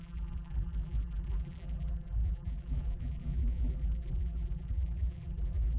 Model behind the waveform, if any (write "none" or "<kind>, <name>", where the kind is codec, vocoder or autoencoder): vocoder, BigVGAN v2